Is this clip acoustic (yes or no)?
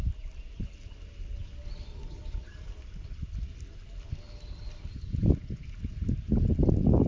yes